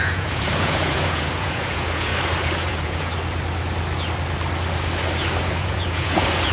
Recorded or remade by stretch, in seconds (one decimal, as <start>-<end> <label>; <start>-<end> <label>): 0.0-2.1 remade; 2.1-2.7 recorded; 2.7-3.1 remade; 3.1-5.4 recorded; 5.4-6.5 remade